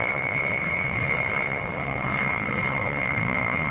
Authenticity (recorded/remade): remade